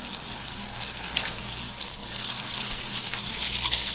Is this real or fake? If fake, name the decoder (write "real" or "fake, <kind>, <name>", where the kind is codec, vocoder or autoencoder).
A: fake, codec, SNAC